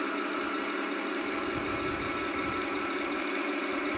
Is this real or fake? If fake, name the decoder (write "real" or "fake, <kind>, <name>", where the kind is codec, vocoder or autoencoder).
fake, vocoder, BigVGAN v2